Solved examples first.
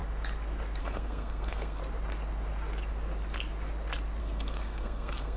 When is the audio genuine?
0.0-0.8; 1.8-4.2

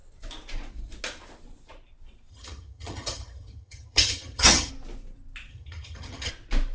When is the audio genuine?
0.0-2.3; 4.7-5.5; 6.3-6.7

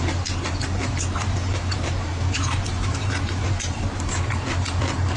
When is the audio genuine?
0.0-0.8; 3.9-5.2

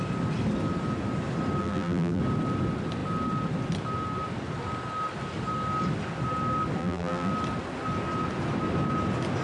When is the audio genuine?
0.0-1.6; 2.2-6.8; 7.3-9.4

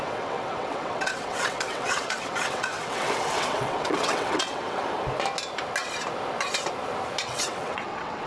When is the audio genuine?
4.8-7.2

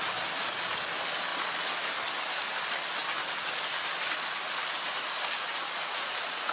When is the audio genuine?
0.0-5.8

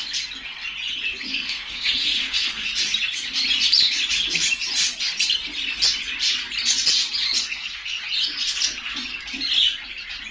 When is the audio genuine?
0.0-1.3; 2.7-7.4; 8.0-10.3

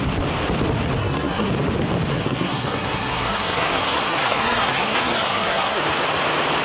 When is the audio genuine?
0.0-1.0; 1.5-2.1; 5.8-6.6